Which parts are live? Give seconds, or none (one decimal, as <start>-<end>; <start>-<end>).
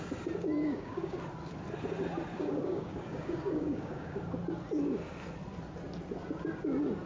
0.0-0.6; 1.2-2.3; 4.2-7.1